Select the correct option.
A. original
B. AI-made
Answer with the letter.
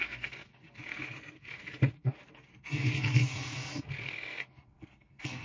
B